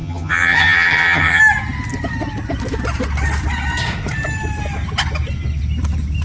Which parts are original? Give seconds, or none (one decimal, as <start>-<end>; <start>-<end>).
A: 1.4-6.2